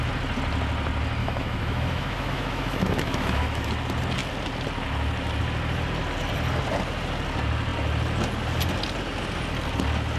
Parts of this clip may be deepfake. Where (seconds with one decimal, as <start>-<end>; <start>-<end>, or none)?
1.2-3.7